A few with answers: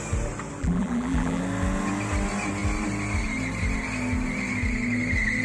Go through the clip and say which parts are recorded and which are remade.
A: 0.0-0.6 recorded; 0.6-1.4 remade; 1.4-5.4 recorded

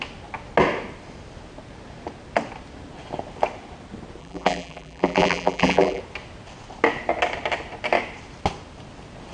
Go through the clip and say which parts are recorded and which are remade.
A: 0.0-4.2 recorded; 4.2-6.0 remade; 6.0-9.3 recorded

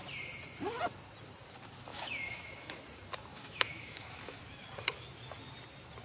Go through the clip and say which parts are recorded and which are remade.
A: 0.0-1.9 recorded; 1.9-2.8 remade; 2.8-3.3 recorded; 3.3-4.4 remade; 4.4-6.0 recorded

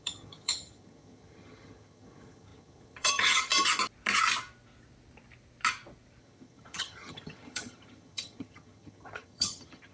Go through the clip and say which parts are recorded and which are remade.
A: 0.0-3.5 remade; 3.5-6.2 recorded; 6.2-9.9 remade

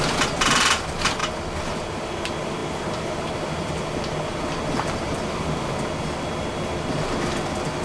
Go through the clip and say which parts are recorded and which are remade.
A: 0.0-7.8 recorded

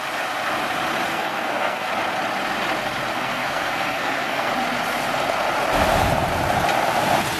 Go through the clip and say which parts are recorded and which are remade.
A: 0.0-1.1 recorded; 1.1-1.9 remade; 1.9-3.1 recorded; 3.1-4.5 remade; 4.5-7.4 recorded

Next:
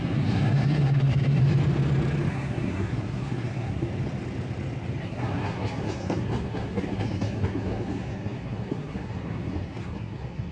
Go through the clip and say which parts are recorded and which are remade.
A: 0.0-1.4 remade; 1.4-2.3 recorded; 2.3-3.9 remade; 3.9-5.0 recorded; 5.0-10.5 remade